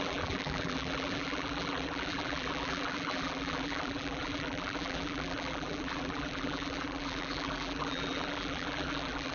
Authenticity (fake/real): fake